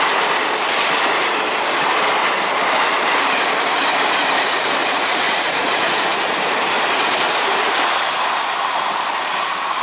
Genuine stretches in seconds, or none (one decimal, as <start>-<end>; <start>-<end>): 0.0-4.8; 5.9-9.8